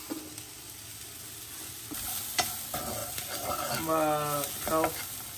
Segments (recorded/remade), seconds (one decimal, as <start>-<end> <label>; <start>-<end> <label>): 0.0-5.4 recorded